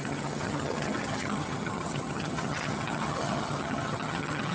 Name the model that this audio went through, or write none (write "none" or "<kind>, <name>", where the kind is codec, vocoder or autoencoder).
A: vocoder, HiFi-GAN